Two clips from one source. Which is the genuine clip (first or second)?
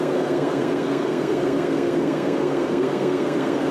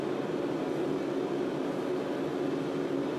second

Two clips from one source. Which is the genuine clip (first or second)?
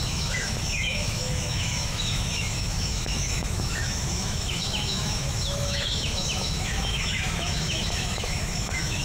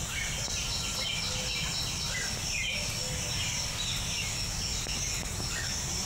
second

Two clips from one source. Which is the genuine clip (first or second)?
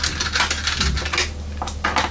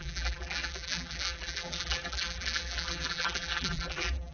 first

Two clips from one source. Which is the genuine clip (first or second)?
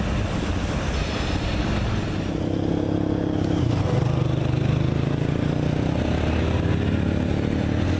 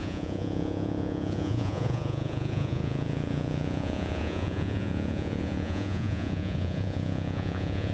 first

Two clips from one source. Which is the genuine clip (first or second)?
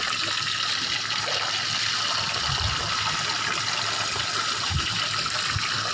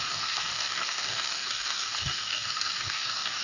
first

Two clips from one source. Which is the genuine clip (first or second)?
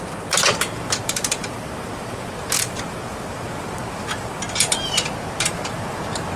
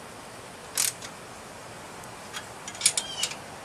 second